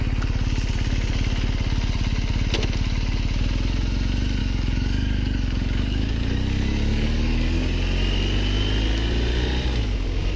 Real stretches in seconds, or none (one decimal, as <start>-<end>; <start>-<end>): 0.0-4.4; 7.6-10.4